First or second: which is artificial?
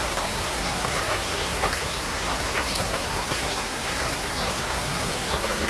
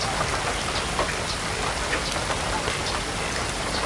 first